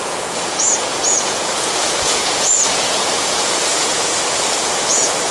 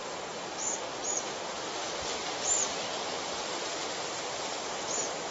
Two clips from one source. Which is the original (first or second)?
second